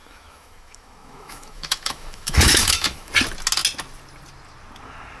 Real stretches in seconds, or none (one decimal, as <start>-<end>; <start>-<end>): 3.1-5.2

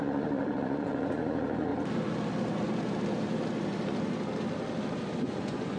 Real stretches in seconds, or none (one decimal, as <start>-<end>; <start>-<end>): 1.7-5.2